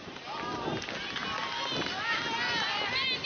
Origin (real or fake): real